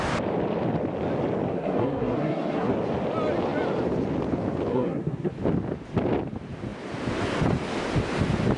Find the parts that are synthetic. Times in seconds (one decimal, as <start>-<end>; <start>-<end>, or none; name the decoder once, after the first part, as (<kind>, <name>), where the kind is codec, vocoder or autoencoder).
1.5-2.7 (codec, SNAC); 4.7-5.3